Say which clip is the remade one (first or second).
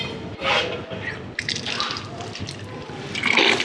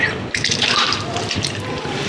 second